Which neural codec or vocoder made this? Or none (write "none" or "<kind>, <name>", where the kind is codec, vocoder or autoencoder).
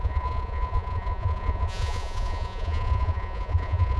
vocoder, Vocos